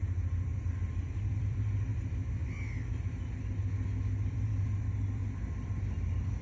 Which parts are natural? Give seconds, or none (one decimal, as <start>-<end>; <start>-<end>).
1.9-4.3; 5.2-6.4